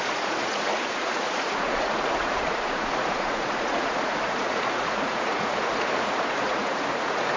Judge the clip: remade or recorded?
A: remade